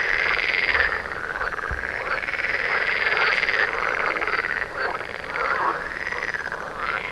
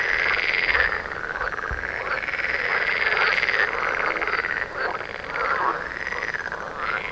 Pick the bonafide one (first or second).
second